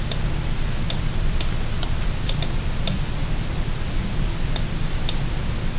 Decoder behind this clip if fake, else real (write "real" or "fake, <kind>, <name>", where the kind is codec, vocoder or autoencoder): real